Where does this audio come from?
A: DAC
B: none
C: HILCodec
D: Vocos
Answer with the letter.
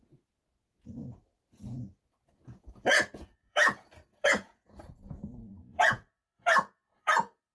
D